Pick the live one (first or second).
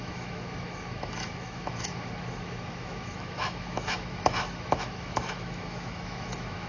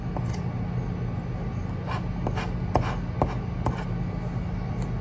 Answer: second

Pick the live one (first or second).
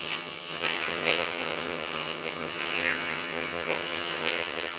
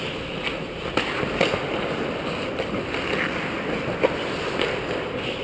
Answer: second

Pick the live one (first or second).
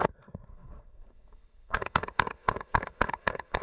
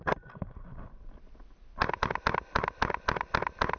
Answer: second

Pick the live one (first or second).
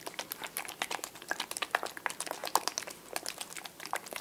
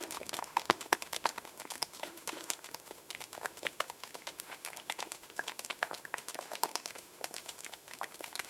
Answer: first